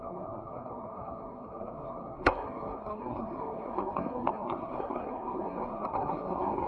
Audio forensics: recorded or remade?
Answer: remade